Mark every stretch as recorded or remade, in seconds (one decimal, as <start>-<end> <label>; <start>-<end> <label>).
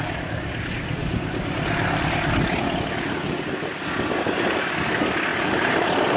0.0-5.3 recorded; 5.3-6.2 remade